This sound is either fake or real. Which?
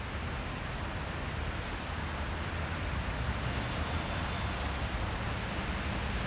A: real